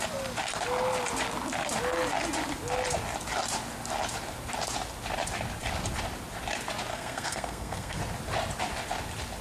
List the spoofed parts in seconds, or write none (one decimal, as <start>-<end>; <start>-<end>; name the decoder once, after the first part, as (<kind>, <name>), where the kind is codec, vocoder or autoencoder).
6.9-8.0 (codec, SNAC)